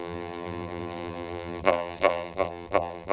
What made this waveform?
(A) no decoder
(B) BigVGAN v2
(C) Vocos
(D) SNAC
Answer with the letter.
B